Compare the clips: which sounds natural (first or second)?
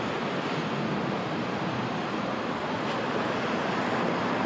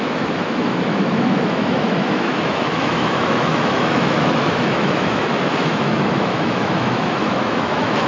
first